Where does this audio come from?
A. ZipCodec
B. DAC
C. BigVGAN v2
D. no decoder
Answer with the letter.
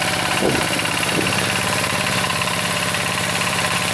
C